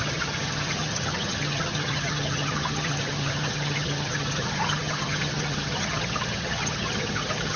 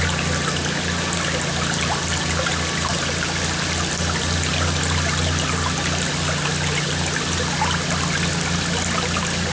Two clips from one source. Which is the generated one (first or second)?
first